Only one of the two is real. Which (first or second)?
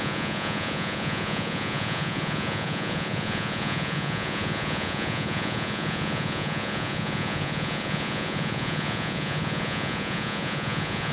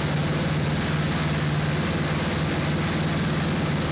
second